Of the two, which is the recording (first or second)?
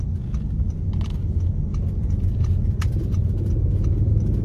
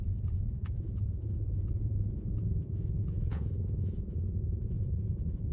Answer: first